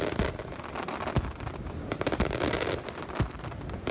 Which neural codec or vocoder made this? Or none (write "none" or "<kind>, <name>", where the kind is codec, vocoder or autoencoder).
none